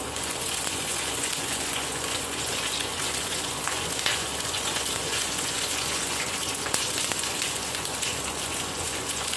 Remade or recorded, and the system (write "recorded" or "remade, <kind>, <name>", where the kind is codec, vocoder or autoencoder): remade, vocoder, Vocos